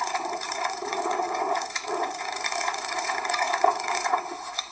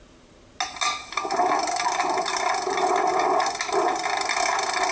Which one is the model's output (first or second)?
first